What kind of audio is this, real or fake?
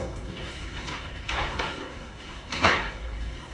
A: fake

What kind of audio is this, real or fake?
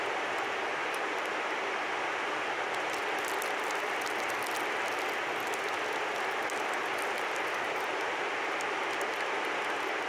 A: real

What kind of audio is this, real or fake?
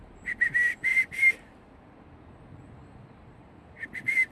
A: fake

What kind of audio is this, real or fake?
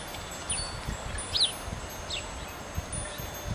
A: real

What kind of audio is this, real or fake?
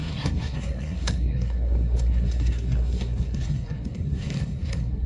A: fake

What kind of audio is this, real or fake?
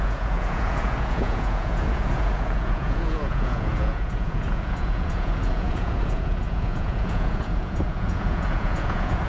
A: fake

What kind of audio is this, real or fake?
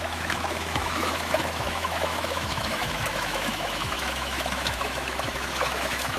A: fake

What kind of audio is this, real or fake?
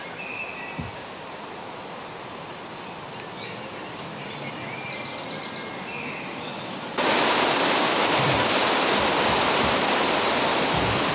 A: real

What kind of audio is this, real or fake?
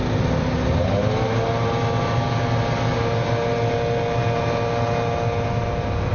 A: real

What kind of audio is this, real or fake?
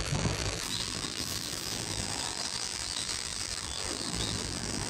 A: fake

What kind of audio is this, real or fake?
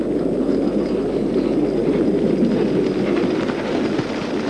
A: real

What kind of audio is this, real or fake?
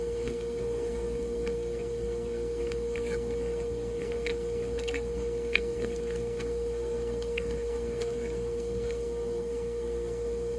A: fake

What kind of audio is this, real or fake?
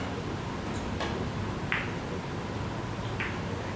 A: real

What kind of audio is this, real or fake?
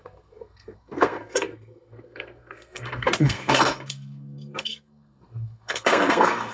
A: fake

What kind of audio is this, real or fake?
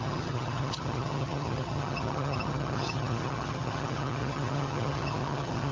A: fake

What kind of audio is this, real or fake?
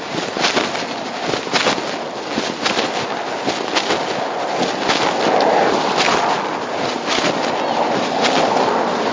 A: real